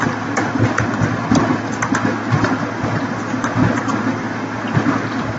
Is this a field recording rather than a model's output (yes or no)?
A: yes